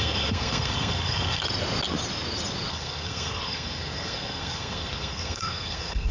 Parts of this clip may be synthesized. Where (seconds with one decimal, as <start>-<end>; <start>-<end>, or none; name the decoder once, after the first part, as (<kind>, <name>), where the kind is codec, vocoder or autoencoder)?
0.0-1.4 (codec, SNAC); 2.7-6.1